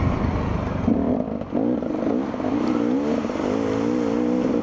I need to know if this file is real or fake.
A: real